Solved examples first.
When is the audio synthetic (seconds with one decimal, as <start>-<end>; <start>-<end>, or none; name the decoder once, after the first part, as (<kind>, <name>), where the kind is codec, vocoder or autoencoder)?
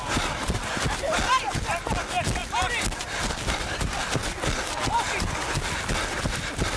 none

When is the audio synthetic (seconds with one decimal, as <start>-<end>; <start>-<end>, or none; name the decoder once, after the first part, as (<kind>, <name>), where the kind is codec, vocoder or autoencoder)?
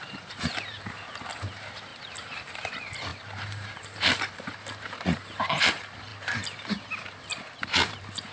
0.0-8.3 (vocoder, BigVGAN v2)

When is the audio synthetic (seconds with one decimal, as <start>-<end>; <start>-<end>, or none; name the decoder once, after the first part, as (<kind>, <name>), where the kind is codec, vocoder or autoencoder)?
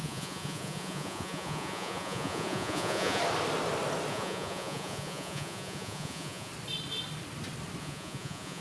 0.0-3.2 (vocoder, Vocos); 4.1-6.5; 7.8-8.6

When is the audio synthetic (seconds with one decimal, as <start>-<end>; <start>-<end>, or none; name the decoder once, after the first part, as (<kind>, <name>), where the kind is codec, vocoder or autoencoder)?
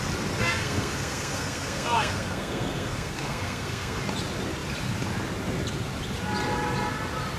0.4-4.0 (codec, SNAC)